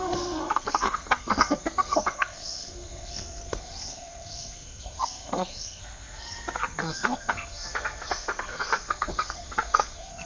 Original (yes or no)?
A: no